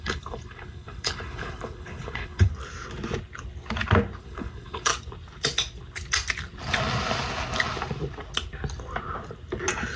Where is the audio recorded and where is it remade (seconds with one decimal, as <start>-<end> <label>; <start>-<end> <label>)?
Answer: 0.0-2.5 remade; 2.5-4.2 recorded; 4.2-4.9 remade; 4.9-10.0 recorded

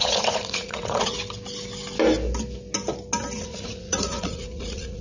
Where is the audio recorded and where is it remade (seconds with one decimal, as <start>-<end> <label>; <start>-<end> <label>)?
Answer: 0.0-1.1 remade; 1.1-3.4 recorded; 3.4-5.0 remade

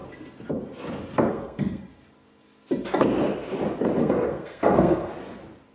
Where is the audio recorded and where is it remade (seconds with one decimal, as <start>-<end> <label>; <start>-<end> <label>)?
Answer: 0.0-1.3 recorded; 1.3-1.8 remade; 1.8-4.0 recorded; 4.0-5.1 remade; 5.1-5.7 recorded

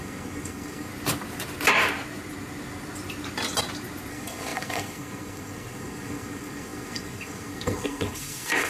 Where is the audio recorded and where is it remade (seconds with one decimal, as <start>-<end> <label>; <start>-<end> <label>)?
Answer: 0.0-0.9 remade; 0.9-4.1 recorded; 4.1-8.7 remade

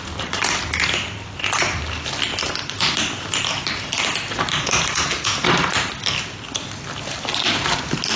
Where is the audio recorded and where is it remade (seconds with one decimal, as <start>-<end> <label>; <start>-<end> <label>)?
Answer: 0.0-2.3 recorded; 2.3-3.5 remade; 3.5-8.2 recorded

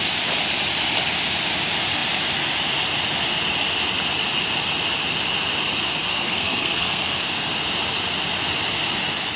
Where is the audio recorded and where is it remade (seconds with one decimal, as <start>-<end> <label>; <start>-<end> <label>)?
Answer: 0.0-6.1 recorded; 6.1-7.5 remade; 7.5-9.4 recorded

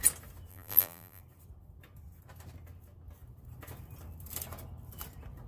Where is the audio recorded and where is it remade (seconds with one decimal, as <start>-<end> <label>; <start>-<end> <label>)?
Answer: 0.0-0.5 recorded; 0.5-1.2 remade; 1.2-5.5 recorded

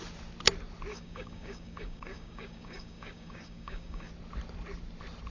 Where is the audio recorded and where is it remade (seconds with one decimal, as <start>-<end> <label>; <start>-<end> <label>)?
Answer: 0.0-0.9 recorded; 0.9-4.1 remade; 4.1-5.3 recorded